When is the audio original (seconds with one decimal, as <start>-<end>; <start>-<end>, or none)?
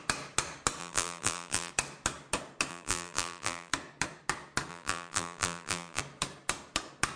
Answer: 0.0-0.8; 1.7-2.7; 3.7-4.7; 6.0-7.2